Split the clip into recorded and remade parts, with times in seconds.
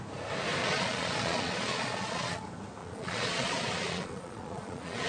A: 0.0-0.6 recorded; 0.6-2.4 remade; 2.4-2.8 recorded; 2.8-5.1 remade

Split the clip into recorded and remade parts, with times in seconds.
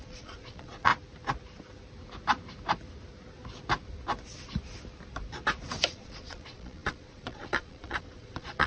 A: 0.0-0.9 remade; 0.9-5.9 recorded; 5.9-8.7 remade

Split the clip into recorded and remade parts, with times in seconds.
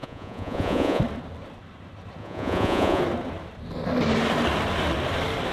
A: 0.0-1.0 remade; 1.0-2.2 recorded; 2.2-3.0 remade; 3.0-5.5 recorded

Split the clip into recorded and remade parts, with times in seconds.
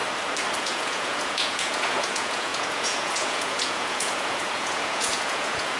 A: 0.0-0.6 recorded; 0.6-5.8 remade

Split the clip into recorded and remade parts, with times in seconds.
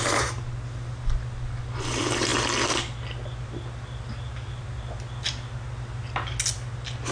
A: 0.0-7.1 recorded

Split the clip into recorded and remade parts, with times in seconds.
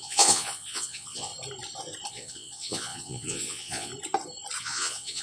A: 0.0-1.3 remade; 1.3-2.1 recorded; 2.1-3.9 remade; 3.9-4.6 recorded; 4.6-5.2 remade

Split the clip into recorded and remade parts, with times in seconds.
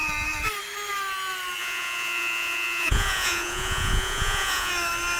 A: 0.0-1.6 recorded; 1.6-4.7 remade; 4.7-5.2 recorded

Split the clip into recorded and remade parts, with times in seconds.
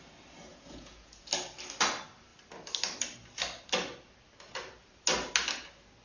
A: 0.0-0.5 recorded; 0.5-1.3 remade; 1.3-6.0 recorded